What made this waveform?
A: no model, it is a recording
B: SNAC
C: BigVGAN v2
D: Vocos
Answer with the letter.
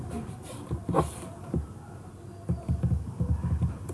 A